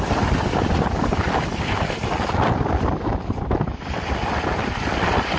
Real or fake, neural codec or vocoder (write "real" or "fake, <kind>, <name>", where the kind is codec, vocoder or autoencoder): real